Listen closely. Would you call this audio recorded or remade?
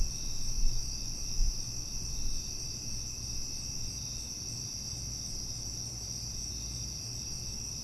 recorded